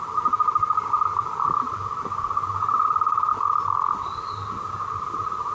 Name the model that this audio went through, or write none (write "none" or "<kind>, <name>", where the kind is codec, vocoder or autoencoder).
none